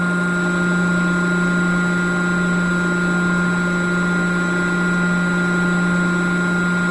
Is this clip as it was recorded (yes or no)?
yes